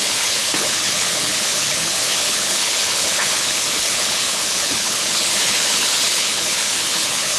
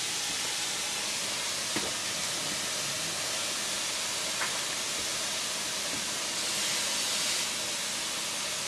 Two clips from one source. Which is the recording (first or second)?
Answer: second